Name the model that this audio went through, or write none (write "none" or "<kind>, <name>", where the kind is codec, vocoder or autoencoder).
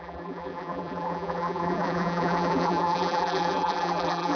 vocoder, BigVGAN v2